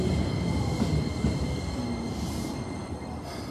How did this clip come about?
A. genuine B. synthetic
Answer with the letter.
A